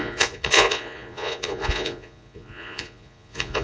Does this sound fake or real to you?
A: fake